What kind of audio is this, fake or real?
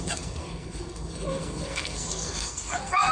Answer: fake